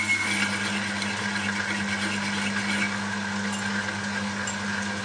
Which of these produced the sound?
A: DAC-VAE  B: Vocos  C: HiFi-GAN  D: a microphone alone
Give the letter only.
D